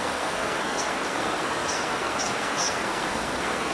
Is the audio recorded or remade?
remade